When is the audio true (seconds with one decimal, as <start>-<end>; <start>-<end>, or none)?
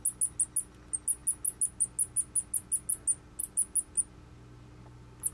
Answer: 0.0-5.3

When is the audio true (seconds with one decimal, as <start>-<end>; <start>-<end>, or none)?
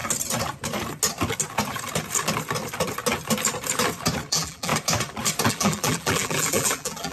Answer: 0.0-4.3; 4.7-5.5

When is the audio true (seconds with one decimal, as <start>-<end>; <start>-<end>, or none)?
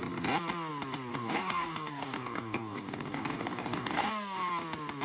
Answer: 0.0-1.1; 4.1-5.0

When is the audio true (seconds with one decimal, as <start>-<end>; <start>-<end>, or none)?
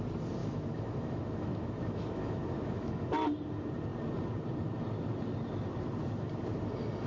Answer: 0.0-0.4; 3.1-7.1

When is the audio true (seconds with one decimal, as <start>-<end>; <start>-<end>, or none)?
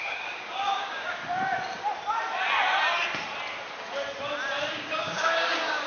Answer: 1.2-4.7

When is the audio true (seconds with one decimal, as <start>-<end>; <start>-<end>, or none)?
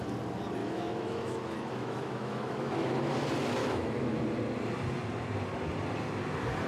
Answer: 0.0-0.6; 3.1-3.6; 4.2-6.7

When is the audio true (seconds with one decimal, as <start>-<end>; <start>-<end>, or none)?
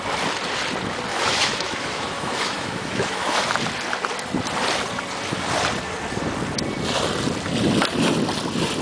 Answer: 0.0-1.1; 3.3-8.8